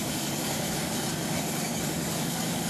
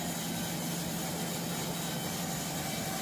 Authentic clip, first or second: second